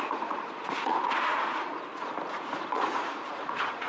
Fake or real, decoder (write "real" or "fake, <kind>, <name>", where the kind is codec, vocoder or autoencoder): fake, vocoder, Vocos